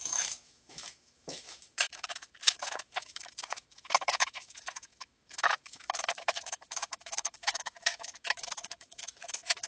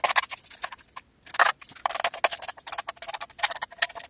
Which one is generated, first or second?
first